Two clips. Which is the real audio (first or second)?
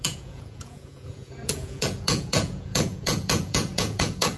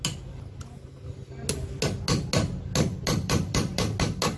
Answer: second